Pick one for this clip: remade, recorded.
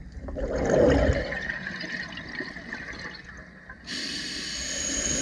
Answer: recorded